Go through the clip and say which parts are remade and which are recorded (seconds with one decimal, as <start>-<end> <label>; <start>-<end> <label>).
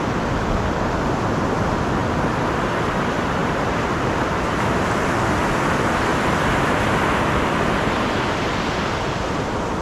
0.0-3.4 recorded; 3.4-5.0 remade; 5.0-9.8 recorded